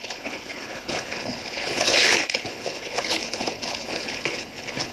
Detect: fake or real fake